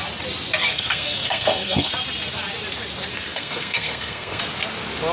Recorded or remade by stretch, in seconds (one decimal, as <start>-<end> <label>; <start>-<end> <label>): 0.0-0.7 recorded; 0.7-1.9 remade; 1.9-3.1 recorded; 3.1-4.4 remade; 4.4-5.1 recorded